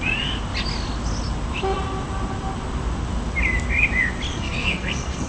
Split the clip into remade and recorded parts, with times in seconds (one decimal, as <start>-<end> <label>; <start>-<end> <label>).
0.0-4.3 recorded; 4.3-5.3 remade